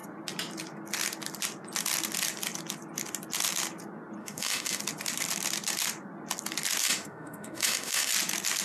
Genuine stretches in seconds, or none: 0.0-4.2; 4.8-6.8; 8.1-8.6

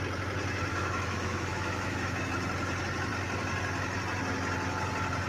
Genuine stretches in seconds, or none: 0.0-0.7; 2.3-5.3

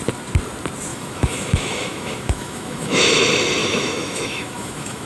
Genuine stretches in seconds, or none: 0.0-0.9; 3.0-3.6

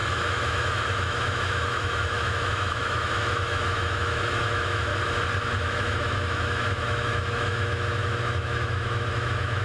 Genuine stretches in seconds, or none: 4.9-5.6

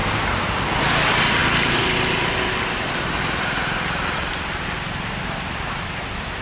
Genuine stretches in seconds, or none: 0.0-6.4